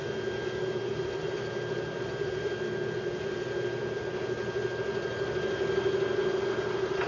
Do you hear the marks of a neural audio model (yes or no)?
no